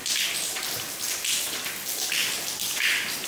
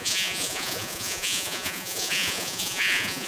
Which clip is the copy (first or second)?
second